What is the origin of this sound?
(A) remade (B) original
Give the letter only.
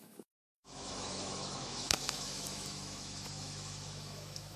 A